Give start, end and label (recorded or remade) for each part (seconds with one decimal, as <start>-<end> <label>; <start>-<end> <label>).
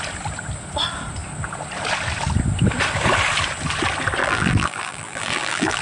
0.0-4.2 recorded; 4.2-5.8 remade